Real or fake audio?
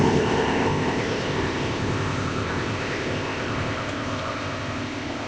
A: fake